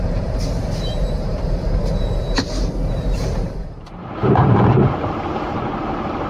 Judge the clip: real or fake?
fake